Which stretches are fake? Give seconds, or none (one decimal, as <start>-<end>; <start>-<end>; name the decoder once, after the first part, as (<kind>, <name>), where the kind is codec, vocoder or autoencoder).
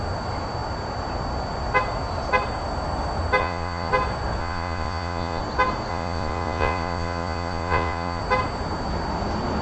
3.4-3.9 (vocoder, Vocos); 4.4-5.4; 5.9-8.2